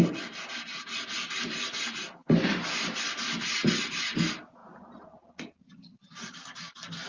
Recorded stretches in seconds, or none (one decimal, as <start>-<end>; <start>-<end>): 0.0-7.1